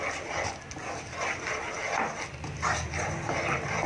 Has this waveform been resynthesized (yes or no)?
no